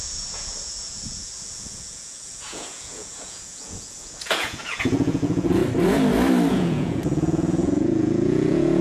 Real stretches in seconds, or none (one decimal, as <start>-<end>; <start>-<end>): 5.6-6.5